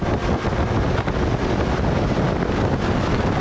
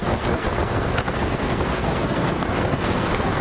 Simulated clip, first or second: second